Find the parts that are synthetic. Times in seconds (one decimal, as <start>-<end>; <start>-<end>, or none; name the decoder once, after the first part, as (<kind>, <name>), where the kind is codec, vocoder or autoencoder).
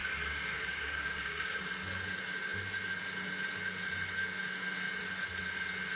0.0-1.6 (codec, DAC)